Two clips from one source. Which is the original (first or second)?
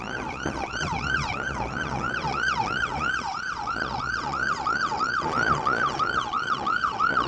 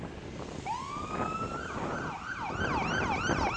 second